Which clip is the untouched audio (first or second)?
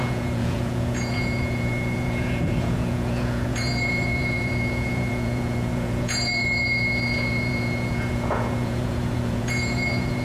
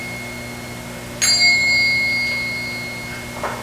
second